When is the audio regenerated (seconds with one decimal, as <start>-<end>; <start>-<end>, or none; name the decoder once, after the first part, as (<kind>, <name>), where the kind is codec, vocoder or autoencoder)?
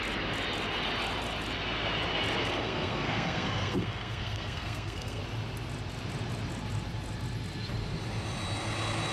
2.4-5.2 (codec, SNAC)